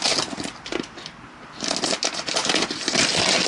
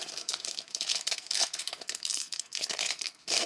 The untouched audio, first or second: first